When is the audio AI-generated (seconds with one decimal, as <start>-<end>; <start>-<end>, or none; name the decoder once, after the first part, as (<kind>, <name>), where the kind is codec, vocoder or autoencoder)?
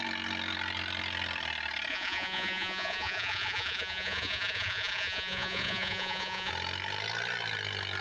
1.9-6.5 (vocoder, Vocos)